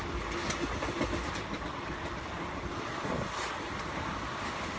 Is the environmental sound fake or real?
real